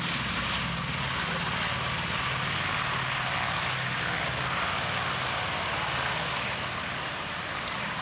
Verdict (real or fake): real